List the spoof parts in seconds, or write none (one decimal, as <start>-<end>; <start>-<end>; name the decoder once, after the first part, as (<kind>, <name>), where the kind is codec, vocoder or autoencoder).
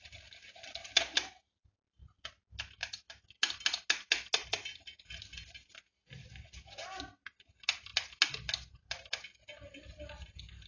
none